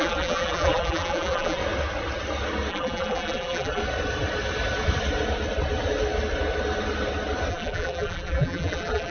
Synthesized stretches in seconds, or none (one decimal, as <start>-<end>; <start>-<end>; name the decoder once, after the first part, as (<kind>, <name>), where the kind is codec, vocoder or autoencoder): 0.0-1.6 (vocoder, BigVGAN v2); 2.7-3.8; 7.5-9.1